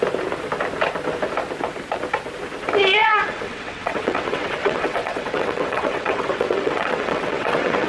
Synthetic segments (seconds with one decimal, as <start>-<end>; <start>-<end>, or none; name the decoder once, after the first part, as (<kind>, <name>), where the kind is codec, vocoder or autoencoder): 3.0-7.9 (vocoder, WaveNeXt)